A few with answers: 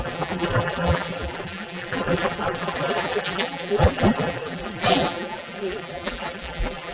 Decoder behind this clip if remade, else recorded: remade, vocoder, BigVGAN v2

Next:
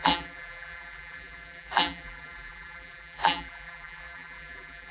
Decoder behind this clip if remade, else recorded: remade, vocoder, BigVGAN v2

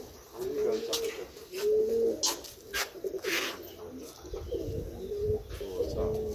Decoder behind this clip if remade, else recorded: recorded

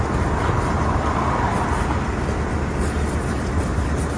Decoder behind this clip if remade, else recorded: recorded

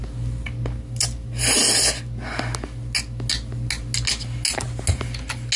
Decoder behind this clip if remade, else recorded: recorded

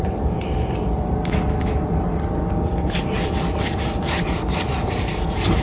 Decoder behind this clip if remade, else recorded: remade, vocoder, BigVGAN v2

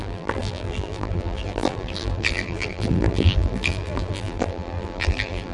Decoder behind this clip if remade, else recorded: remade, vocoder, BigVGAN v2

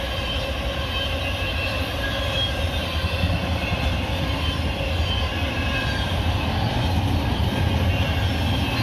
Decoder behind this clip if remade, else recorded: recorded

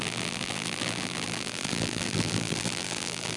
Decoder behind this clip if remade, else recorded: remade, vocoder, BigVGAN v2